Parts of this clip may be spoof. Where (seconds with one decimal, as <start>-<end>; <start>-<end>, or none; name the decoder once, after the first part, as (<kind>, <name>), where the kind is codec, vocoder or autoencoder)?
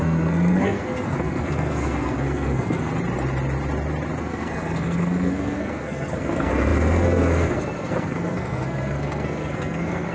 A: 0.0-2.9 (codec, SNAC); 4.2-10.1